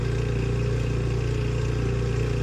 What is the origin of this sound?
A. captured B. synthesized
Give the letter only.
A